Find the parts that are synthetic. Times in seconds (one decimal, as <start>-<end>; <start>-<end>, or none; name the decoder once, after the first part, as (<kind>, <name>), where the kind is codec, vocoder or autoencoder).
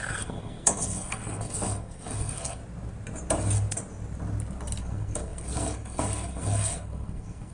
0.0-2.6 (codec, SNAC); 4.8-7.5